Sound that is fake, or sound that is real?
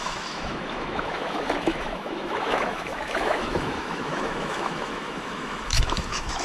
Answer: fake